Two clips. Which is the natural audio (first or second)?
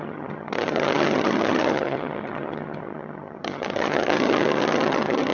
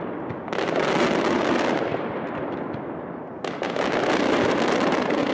second